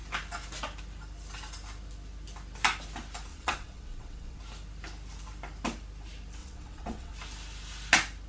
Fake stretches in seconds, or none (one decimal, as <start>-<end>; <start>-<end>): 3.3-4.4; 6.4-7.1